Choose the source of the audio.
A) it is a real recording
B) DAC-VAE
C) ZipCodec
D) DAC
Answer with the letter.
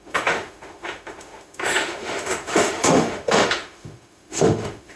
B